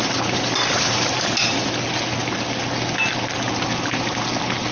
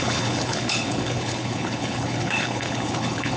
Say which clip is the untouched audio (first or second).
first